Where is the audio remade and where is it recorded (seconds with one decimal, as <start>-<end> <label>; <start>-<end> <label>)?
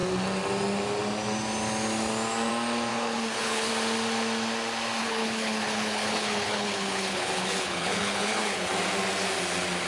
0.0-2.9 recorded; 2.9-3.7 remade; 3.7-5.0 recorded; 5.0-8.7 remade; 8.7-9.9 recorded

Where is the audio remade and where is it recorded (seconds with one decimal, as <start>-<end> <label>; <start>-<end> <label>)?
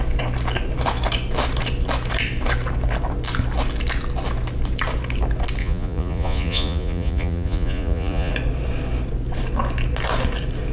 0.0-5.6 recorded; 5.6-8.3 remade; 8.3-10.7 recorded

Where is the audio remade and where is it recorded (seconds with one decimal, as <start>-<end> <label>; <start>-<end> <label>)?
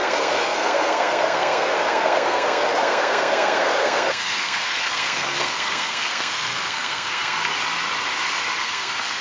0.0-7.5 remade; 7.5-8.6 recorded; 8.6-9.2 remade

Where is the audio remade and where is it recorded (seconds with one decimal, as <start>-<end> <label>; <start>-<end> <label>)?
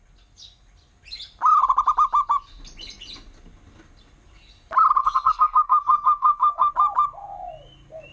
0.0-5.0 recorded; 5.0-6.7 remade; 6.7-8.1 recorded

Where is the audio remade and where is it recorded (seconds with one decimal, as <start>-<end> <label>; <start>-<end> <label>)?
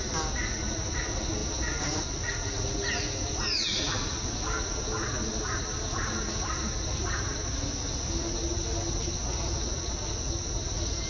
0.0-11.1 recorded